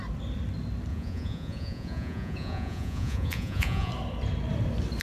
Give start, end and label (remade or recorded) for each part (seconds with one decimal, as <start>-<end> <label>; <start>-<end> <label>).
0.0-0.9 recorded; 0.9-3.9 remade; 3.9-5.0 recorded